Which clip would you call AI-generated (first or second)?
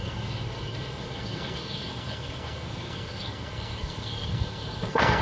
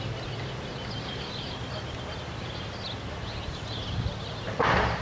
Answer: first